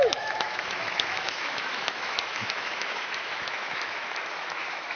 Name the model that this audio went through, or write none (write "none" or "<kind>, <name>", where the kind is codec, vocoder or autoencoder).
autoencoder, DAC-VAE